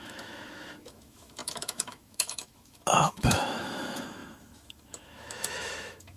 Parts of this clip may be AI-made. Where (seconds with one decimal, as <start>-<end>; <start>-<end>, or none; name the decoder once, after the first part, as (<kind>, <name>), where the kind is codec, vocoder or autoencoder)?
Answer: 0.0-6.2 (autoencoder, DAC-VAE)